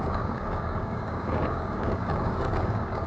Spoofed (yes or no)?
yes